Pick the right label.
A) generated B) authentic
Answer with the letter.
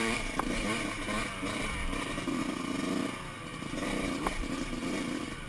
A